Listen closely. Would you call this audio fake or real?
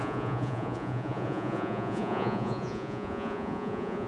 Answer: fake